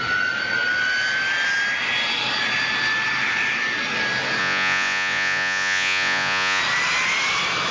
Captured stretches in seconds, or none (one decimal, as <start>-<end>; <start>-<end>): 0.0-4.4; 6.6-7.7